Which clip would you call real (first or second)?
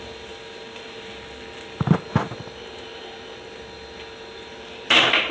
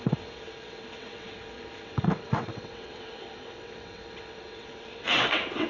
first